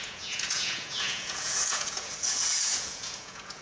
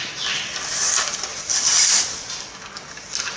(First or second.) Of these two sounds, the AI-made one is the first